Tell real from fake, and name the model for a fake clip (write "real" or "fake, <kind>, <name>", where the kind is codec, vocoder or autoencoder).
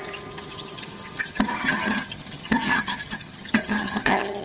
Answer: fake, vocoder, HiFi-GAN